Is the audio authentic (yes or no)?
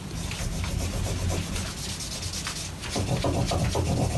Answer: yes